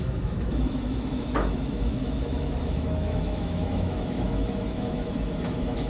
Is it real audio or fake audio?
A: fake